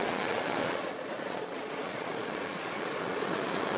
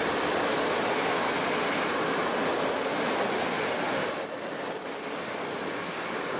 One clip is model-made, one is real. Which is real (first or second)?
second